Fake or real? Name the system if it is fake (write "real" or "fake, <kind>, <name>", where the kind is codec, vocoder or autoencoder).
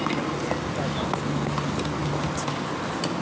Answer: real